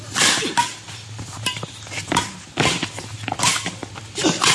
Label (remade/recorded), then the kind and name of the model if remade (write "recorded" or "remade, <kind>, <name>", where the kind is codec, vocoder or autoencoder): recorded